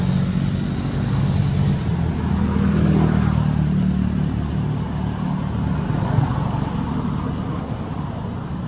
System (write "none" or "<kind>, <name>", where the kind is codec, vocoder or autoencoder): none